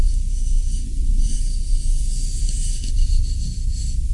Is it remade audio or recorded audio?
recorded